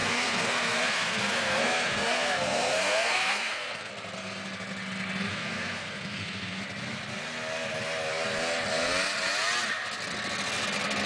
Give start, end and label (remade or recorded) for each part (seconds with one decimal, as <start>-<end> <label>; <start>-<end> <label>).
0.0-3.9 remade; 3.9-5.3 recorded; 5.3-6.6 remade; 6.6-11.1 recorded